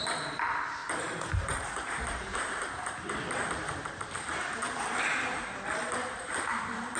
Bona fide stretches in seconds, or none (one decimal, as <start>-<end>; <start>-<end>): 0.0-0.8; 4.9-6.0